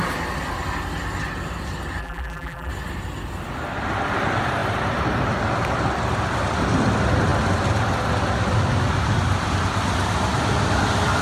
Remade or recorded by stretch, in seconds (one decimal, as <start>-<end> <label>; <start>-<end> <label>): 0.0-2.0 recorded; 2.0-2.7 remade; 2.7-11.2 recorded